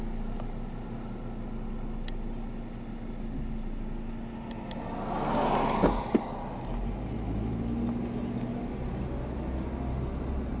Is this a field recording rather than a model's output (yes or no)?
yes